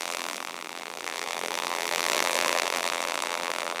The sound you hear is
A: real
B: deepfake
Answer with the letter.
B